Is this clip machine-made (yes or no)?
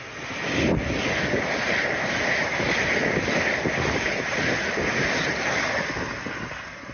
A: no